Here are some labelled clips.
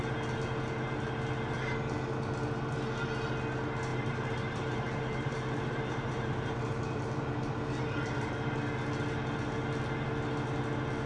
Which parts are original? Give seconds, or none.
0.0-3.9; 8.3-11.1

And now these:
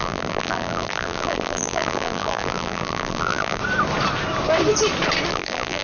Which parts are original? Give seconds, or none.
3.6-5.3

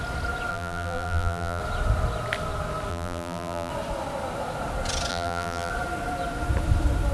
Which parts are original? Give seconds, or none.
0.0-0.5; 1.6-2.9; 3.7-5.1; 5.7-7.1